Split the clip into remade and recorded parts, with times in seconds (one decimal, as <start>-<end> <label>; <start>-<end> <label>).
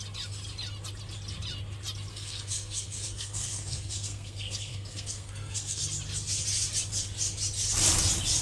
0.0-2.1 recorded; 2.1-5.8 remade; 5.8-8.4 recorded